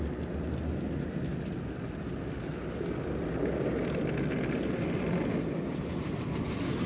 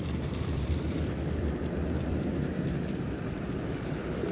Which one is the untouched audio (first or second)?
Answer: first